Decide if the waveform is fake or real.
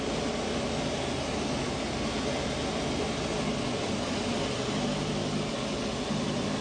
real